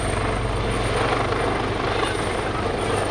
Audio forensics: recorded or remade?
recorded